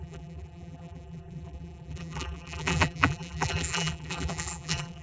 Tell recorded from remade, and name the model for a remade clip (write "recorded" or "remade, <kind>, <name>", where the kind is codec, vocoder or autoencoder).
remade, vocoder, BigVGAN v2